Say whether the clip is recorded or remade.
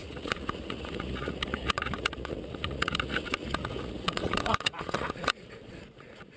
remade